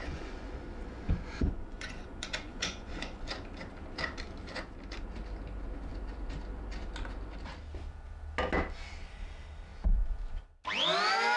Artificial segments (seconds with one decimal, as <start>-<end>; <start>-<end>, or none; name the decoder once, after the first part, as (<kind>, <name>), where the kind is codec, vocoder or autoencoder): 0.0-3.3 (vocoder, Vocos)